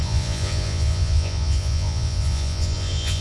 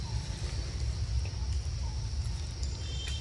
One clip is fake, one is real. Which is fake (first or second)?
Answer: first